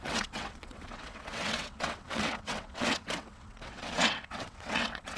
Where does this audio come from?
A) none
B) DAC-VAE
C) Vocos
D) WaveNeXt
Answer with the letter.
D